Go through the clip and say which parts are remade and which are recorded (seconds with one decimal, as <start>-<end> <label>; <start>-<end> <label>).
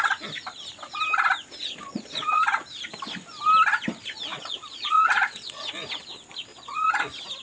0.0-1.6 recorded; 1.6-2.4 remade; 2.4-4.3 recorded; 4.3-5.7 remade; 5.7-6.5 recorded; 6.5-7.0 remade; 7.0-7.4 recorded